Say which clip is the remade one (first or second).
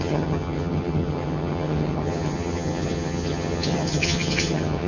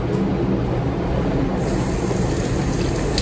first